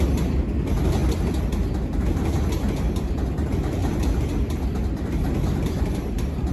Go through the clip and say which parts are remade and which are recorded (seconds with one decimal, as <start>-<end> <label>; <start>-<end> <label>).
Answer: 0.0-3.8 recorded; 3.8-6.5 remade